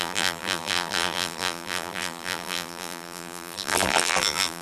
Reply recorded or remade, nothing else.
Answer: remade